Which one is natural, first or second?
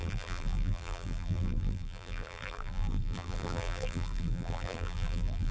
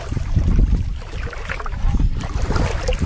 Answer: second